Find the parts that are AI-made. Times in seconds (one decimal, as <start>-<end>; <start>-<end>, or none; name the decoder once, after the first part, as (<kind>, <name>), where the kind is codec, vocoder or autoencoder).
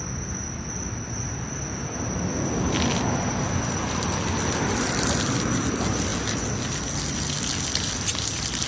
none